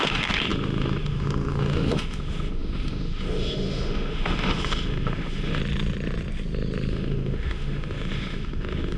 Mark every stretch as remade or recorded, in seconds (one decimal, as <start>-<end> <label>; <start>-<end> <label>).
0.0-5.6 remade; 5.6-6.9 recorded; 6.9-9.0 remade